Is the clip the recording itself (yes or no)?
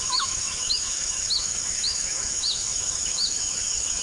no